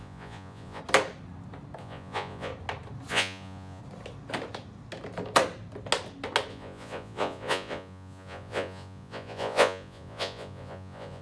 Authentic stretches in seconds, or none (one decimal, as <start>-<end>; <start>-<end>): 0.8-1.8; 2.5-3.1; 3.8-6.5